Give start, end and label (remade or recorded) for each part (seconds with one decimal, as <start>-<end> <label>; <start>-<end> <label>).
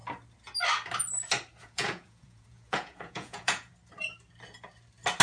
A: 0.0-1.6 recorded; 1.6-3.7 remade; 3.7-5.2 recorded